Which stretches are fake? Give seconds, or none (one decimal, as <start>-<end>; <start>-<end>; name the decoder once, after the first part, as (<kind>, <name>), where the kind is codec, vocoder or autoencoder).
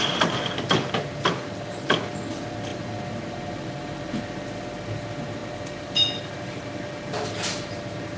none